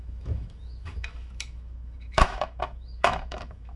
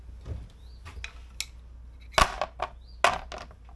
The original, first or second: second